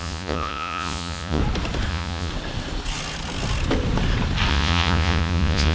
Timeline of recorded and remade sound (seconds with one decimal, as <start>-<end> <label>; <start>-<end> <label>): 0.0-1.4 remade; 1.4-1.9 recorded; 1.9-2.3 remade; 2.3-4.5 recorded; 4.5-5.7 remade